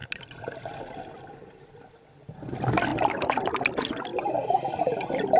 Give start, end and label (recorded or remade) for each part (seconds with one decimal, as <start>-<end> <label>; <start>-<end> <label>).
0.0-5.4 recorded